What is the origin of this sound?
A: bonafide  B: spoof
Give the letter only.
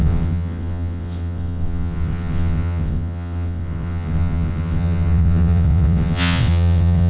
B